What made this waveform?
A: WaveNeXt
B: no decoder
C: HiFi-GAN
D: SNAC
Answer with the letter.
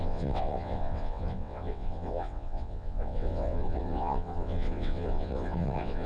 A